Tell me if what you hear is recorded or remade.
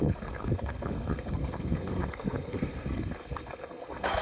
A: remade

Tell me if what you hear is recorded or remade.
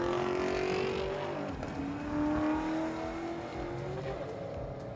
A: recorded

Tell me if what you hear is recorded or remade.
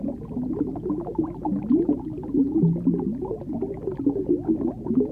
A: recorded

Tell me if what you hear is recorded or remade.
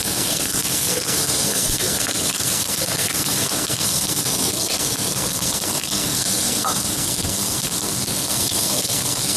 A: remade